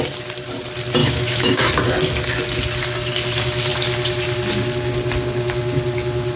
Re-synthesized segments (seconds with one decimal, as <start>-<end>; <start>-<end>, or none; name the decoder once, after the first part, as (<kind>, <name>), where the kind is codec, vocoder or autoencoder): 1.0-1.7 (autoencoder, DAC-VAE)